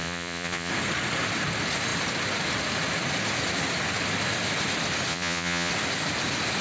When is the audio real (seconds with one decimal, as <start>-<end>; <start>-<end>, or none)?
0.7-5.1; 5.7-6.6